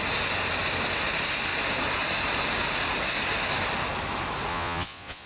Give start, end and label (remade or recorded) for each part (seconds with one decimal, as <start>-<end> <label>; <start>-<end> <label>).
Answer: 0.0-4.5 recorded; 4.5-5.3 remade